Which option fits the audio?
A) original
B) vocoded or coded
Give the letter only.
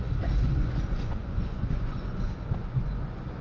B